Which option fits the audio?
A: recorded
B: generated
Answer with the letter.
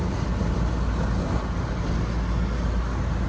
A